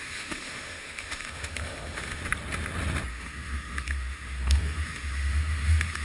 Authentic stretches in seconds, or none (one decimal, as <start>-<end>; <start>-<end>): 2.2-3.1